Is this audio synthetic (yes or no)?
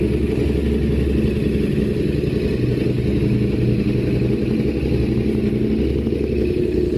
no